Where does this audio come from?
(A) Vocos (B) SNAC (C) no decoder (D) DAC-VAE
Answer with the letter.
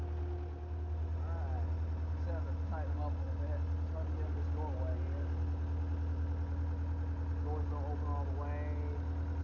C